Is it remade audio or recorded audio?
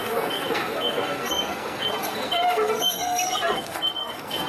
remade